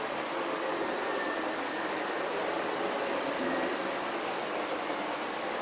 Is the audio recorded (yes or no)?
no